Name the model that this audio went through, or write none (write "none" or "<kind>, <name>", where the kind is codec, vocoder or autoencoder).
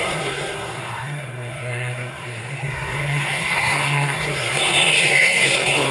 codec, SNAC